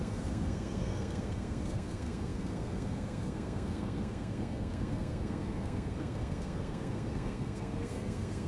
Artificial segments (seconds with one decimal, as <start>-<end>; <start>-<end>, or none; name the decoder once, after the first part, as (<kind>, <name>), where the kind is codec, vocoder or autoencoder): 0.0-8.5 (codec, SNAC)